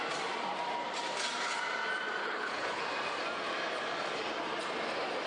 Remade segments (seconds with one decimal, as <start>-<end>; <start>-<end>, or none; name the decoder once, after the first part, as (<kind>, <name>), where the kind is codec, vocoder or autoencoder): 2.2-2.8 (codec, HILCodec)